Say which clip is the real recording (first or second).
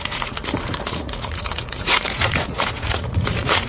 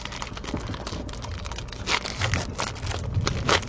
second